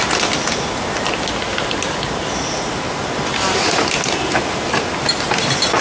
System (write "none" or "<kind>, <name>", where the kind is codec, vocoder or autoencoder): none